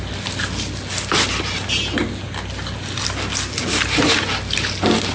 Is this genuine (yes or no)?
yes